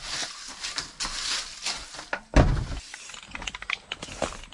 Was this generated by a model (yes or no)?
no